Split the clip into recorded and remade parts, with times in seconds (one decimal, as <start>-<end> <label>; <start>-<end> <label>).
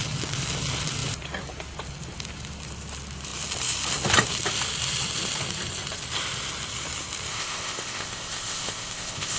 0.0-7.3 recorded; 7.3-9.4 remade